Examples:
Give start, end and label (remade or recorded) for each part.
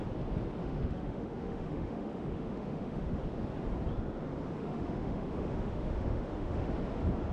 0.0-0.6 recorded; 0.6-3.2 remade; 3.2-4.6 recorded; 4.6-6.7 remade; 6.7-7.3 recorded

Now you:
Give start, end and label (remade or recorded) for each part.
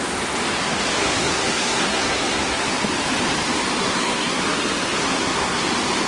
0.0-1.0 recorded; 1.0-2.8 remade; 2.8-3.8 recorded; 3.8-4.4 remade; 4.4-5.0 recorded; 5.0-5.6 remade; 5.6-6.1 recorded